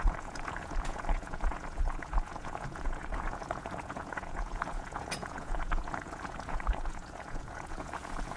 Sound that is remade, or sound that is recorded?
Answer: remade